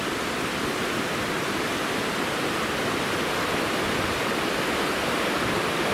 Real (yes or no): yes